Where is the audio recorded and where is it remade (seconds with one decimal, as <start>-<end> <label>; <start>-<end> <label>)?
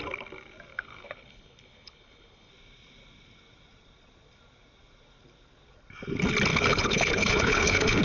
0.0-0.7 recorded; 0.7-2.5 remade; 2.5-6.5 recorded; 6.5-8.0 remade